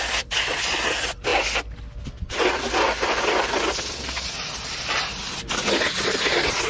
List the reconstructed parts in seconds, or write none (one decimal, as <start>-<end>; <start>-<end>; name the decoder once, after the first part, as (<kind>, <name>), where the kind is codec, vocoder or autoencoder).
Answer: none